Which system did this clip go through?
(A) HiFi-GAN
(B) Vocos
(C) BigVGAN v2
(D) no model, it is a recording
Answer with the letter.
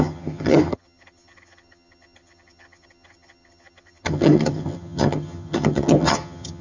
A